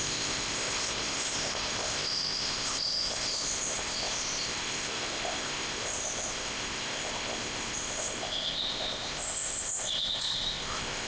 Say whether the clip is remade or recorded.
remade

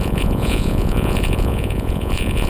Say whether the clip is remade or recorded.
remade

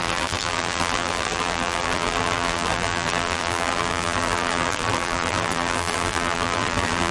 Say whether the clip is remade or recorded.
remade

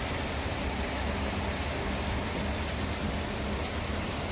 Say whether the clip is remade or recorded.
recorded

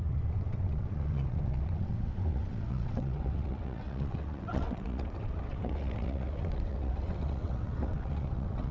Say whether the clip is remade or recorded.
remade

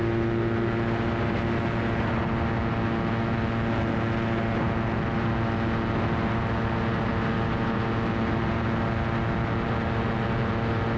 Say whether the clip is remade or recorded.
recorded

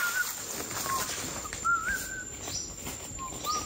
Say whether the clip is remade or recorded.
recorded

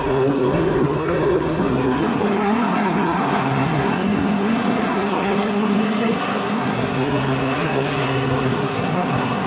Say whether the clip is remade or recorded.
remade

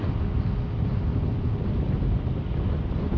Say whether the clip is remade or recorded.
recorded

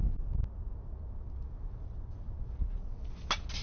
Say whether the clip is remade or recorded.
recorded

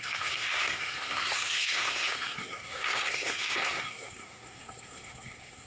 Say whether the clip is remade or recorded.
remade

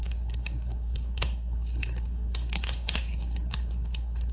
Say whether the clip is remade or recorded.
remade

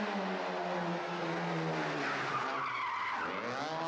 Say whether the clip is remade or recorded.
recorded